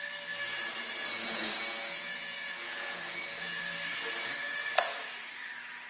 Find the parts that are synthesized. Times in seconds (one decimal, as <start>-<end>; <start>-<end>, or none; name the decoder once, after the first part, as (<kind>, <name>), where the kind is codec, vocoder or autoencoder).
1.2-3.6 (vocoder, Vocos); 4.4-5.3